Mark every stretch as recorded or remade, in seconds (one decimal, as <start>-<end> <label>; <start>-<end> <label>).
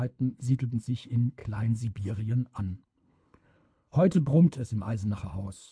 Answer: 0.0-5.7 remade